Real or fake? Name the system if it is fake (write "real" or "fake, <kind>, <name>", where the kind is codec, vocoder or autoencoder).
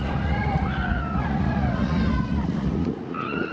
fake, vocoder, Vocos